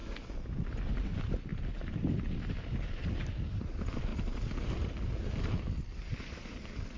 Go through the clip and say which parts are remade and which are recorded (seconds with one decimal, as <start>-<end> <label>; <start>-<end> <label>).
0.0-7.0 recorded